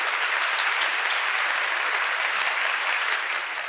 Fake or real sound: real